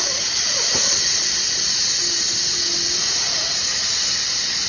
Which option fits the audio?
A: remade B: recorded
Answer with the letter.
B